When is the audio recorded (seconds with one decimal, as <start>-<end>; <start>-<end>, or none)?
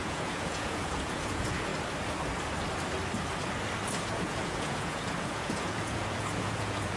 1.7-4.2